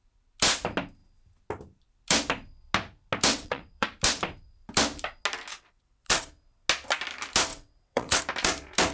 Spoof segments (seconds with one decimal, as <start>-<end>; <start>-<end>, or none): 3.3-3.9; 5.5-6.3; 7.5-8.2